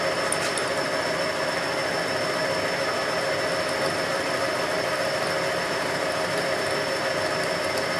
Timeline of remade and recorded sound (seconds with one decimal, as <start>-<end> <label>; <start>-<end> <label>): 0.0-0.6 recorded; 0.6-1.4 remade; 1.4-4.1 recorded; 4.1-6.6 remade; 6.6-8.0 recorded